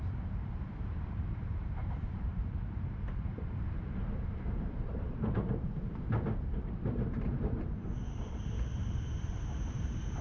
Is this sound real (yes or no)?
no